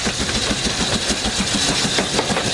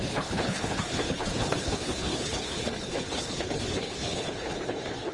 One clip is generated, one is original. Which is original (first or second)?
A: first